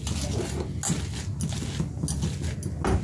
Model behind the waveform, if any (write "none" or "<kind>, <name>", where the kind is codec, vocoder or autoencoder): none